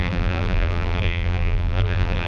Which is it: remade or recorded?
remade